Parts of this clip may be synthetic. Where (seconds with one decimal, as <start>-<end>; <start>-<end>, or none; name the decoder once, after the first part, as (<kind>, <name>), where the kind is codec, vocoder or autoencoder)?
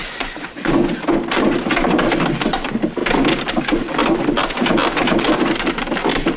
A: 0.0-0.9 (vocoder, Vocos)